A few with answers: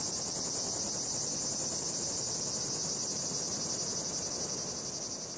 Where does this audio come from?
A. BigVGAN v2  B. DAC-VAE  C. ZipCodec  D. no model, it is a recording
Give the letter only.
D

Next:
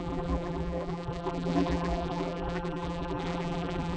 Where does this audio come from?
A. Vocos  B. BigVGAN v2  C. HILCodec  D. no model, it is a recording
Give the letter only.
B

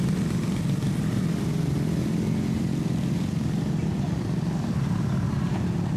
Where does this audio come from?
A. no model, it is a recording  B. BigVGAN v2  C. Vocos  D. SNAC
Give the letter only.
B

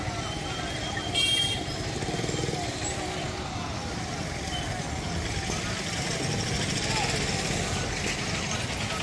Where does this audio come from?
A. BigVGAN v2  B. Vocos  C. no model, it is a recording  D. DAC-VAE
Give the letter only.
C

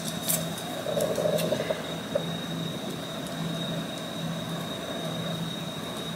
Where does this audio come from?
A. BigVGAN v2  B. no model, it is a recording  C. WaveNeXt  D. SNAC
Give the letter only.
B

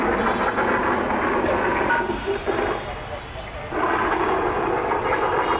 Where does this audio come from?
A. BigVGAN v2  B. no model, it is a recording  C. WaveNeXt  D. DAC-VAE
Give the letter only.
B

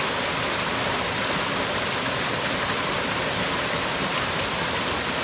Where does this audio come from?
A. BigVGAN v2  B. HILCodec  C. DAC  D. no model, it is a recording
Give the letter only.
D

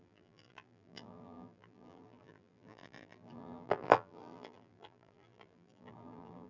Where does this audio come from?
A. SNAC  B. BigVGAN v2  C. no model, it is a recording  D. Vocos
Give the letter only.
B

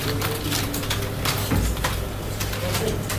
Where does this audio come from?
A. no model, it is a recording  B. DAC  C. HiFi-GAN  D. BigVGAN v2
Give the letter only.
A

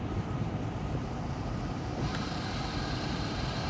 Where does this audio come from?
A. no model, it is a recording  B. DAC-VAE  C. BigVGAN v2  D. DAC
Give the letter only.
C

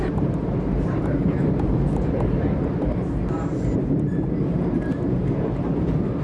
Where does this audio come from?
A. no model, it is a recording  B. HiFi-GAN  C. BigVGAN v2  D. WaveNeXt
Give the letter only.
C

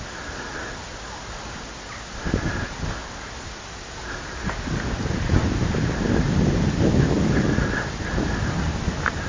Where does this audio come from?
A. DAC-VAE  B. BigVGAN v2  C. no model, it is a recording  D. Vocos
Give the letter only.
C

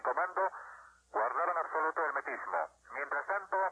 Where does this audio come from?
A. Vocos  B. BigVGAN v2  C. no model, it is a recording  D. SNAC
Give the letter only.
C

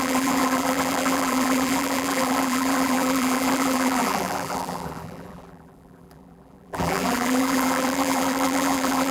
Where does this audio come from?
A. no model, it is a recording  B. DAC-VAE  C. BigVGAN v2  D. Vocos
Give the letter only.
C